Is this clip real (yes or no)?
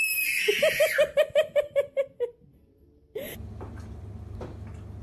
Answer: yes